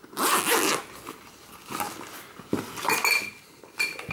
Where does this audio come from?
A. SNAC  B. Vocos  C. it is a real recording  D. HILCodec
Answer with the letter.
C